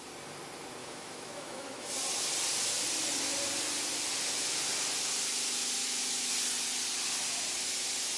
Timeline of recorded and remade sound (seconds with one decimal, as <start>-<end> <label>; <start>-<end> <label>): 0.0-0.8 recorded; 0.8-1.9 remade; 1.9-5.8 recorded; 5.8-6.3 remade; 6.3-8.2 recorded